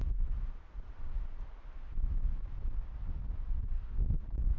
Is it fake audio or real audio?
real